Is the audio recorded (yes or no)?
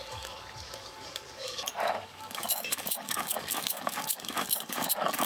no